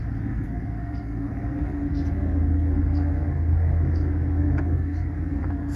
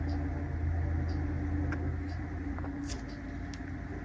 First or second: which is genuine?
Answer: second